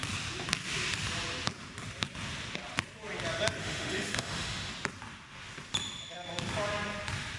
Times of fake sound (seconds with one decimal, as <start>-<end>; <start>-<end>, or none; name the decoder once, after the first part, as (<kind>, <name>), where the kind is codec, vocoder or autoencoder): 3.6-4.7 (autoencoder, DAC-VAE)